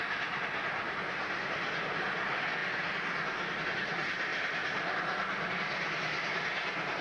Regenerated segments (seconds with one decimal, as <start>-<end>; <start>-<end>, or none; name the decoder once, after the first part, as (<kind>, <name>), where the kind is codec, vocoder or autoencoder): 4.3-5.5 (vocoder, BigVGAN v2)